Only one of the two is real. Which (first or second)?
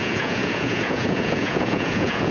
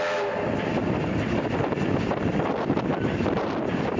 second